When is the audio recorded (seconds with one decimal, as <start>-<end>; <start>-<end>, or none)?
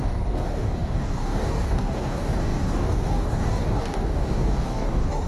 none